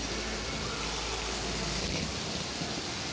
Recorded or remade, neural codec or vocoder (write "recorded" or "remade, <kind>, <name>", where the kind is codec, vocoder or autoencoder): recorded